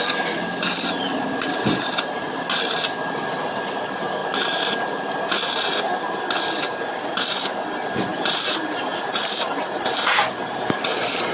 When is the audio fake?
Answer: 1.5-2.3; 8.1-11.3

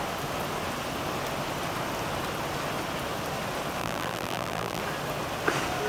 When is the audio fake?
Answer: 3.8-4.8

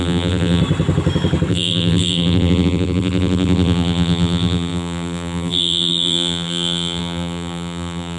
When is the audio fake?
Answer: 0.0-0.6; 1.5-8.2

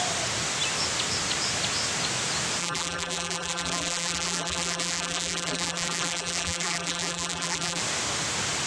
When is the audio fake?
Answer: 2.6-7.8